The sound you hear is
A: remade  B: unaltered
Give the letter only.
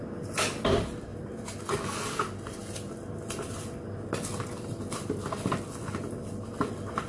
B